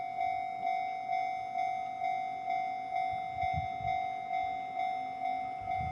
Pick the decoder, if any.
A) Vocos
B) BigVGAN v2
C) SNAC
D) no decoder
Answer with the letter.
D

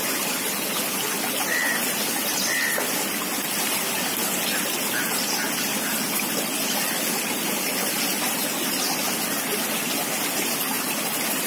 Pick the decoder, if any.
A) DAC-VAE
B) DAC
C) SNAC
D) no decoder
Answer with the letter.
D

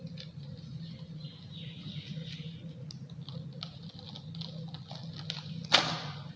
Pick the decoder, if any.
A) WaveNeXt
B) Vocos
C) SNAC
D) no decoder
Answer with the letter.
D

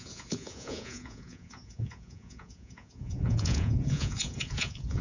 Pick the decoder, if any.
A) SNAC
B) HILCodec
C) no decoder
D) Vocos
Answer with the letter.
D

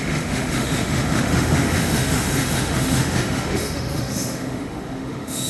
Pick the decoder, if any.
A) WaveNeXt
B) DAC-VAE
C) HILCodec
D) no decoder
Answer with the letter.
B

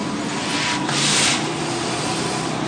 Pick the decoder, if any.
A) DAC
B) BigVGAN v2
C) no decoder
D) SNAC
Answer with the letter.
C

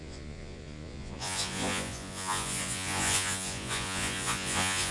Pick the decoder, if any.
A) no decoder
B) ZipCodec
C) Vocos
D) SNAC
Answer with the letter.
C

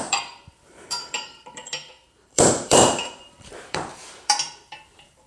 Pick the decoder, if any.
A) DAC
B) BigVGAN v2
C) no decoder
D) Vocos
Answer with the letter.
B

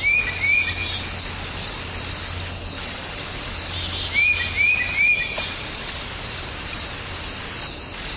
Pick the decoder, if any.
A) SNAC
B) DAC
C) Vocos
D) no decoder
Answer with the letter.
D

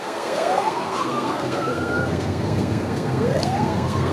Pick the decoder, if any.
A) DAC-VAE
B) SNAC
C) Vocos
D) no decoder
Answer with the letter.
B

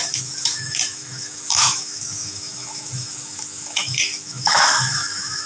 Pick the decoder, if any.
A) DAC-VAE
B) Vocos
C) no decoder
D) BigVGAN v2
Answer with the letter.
A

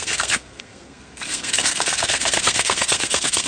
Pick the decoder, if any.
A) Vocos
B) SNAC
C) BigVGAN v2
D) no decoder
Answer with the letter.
B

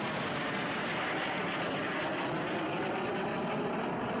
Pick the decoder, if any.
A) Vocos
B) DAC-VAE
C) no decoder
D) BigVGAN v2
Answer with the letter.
C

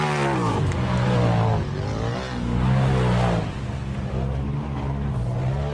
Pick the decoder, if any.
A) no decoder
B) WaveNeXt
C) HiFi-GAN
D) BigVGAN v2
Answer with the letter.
A